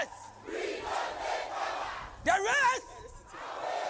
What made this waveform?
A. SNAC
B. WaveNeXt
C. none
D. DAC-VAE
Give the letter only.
C